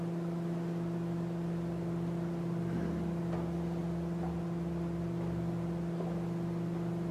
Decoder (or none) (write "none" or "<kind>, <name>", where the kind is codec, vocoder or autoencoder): none